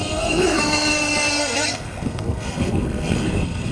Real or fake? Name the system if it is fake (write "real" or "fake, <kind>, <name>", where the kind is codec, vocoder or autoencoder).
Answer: fake, codec, SNAC